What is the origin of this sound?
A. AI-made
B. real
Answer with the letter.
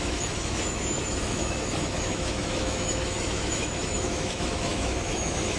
A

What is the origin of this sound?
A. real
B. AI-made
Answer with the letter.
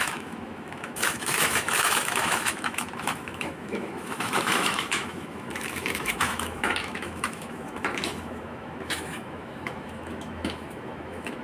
B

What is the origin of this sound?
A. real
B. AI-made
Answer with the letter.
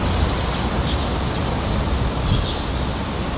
A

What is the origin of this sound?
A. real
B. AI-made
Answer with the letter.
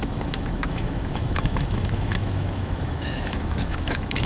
B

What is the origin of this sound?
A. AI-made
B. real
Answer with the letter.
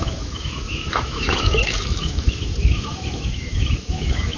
A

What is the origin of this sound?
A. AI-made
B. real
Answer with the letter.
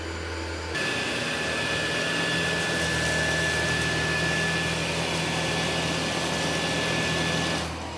B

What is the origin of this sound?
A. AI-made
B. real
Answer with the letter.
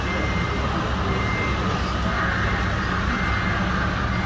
B